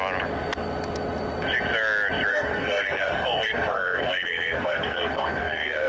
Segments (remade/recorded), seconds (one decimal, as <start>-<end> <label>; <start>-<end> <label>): 0.0-2.3 recorded; 2.3-5.9 remade